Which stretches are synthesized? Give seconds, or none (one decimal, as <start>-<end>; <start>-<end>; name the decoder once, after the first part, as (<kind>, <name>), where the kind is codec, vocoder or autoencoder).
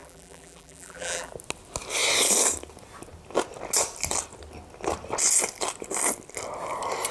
0.0-1.3 (vocoder, BigVGAN v2)